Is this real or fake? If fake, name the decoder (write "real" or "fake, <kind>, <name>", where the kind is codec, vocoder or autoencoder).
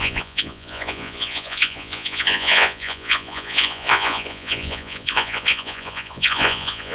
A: fake, vocoder, Vocos